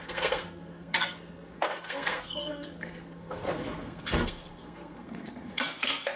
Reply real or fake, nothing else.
fake